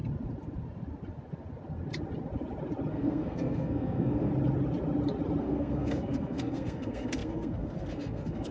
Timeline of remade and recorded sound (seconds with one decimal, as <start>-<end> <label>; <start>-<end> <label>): 0.0-2.9 recorded; 2.9-4.3 remade; 4.3-5.4 recorded; 5.4-8.5 remade